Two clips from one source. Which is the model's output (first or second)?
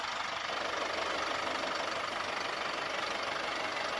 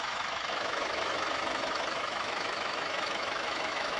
second